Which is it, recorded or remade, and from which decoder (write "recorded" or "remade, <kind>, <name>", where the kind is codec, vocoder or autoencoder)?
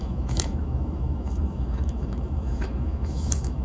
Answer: remade, autoencoder, DAC-VAE